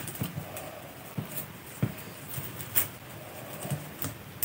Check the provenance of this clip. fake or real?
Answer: real